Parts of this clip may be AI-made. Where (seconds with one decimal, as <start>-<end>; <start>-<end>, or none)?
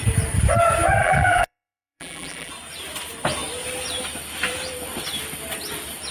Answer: 1.0-2.5